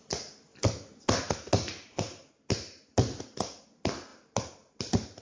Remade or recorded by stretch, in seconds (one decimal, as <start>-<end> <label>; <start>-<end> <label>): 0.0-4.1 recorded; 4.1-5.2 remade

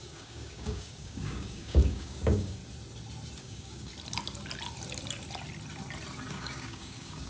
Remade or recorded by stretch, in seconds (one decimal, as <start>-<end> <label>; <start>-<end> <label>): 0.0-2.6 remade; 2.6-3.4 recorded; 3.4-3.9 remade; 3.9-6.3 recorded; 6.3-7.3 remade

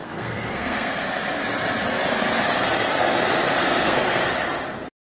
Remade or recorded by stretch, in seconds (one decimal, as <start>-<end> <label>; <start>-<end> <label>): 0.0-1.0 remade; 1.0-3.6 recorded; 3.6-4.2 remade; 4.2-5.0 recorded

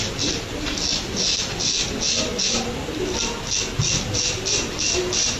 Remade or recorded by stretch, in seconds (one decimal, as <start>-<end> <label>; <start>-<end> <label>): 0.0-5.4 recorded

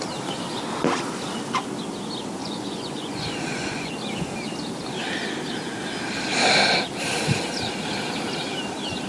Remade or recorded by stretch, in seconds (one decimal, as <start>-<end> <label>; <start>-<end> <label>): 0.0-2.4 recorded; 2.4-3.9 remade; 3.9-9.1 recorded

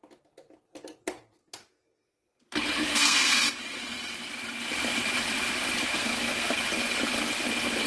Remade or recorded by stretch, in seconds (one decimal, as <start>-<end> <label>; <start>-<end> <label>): 0.0-2.9 recorded; 2.9-3.4 remade; 3.4-5.9 recorded; 5.9-6.6 remade; 6.6-7.9 recorded

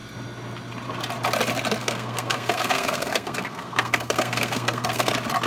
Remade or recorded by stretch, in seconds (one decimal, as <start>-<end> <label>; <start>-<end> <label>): 0.0-1.8 recorded; 1.8-5.1 remade; 5.1-5.5 recorded

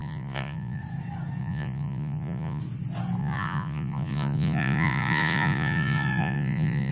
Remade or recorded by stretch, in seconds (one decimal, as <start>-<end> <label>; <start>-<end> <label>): 0.0-0.8 remade; 0.8-1.4 recorded; 1.4-2.6 remade; 2.6-3.2 recorded; 3.2-6.9 remade